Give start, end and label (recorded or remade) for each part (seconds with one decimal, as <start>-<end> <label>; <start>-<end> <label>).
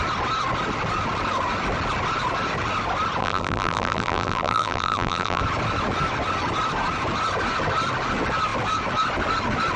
0.0-3.2 recorded; 3.2-5.4 remade; 5.4-9.8 recorded